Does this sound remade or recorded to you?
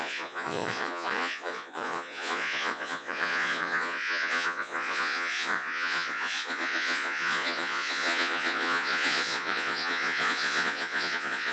remade